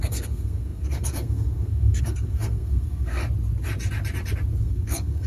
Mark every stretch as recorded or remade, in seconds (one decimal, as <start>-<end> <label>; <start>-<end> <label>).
0.0-3.2 remade; 3.2-4.6 recorded; 4.6-5.3 remade